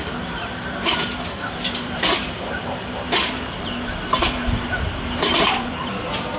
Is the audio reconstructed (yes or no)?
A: yes